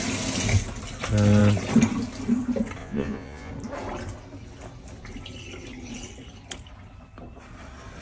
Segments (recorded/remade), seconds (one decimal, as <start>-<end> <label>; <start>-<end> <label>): 0.0-2.8 recorded; 2.8-3.5 remade; 3.5-8.0 recorded